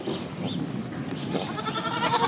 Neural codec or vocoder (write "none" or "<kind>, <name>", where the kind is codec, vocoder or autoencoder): none